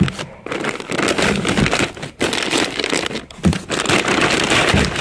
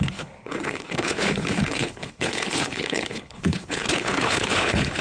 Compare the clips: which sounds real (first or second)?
first